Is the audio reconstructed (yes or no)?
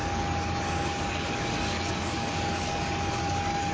yes